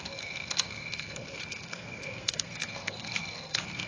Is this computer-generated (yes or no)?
yes